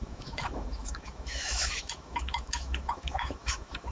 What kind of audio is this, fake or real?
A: fake